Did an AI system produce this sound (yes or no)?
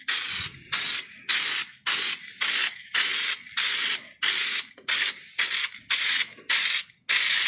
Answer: no